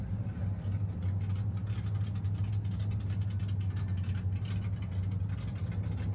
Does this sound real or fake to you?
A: real